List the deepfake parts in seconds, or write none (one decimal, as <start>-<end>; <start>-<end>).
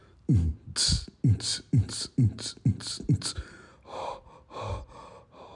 0.0-0.5; 1.5-4.3